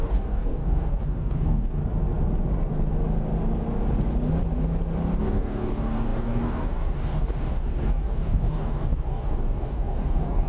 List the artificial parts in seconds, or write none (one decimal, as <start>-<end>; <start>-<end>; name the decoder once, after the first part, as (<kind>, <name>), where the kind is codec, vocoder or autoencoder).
0.0-1.8 (codec, DAC); 5.2-10.5